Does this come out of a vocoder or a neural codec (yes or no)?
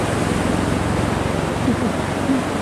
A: no